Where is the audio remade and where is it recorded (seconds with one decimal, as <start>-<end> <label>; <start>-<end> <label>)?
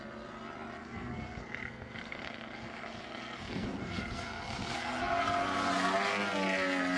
0.0-0.8 recorded; 0.8-5.0 remade; 5.0-7.0 recorded